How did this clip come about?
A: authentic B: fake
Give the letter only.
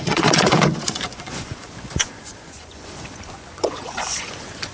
B